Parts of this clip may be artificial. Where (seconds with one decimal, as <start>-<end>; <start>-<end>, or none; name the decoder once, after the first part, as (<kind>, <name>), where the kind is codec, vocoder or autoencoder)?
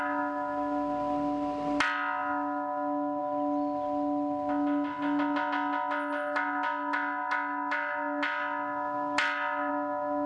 none